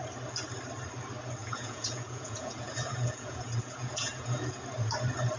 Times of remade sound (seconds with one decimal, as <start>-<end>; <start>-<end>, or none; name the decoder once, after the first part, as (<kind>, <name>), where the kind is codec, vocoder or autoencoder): 1.4-4.6 (vocoder, Vocos)